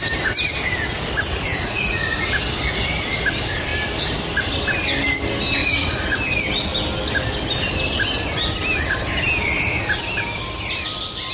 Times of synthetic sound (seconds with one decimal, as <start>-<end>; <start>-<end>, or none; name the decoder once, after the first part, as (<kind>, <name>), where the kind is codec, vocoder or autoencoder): 1.3-2.3 (vocoder, Vocos); 5.6-6.1